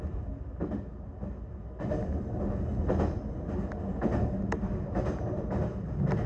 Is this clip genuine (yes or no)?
yes